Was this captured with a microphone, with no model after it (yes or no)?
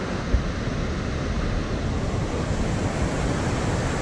yes